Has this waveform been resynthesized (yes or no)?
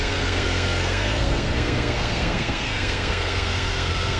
yes